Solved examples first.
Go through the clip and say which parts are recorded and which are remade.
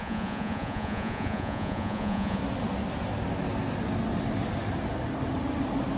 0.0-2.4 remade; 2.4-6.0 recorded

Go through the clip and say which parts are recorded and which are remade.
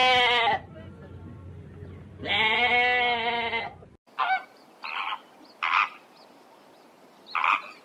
0.0-7.8 recorded